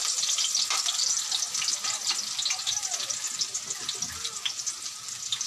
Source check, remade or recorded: recorded